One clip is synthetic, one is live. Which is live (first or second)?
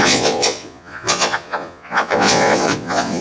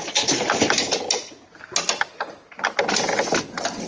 second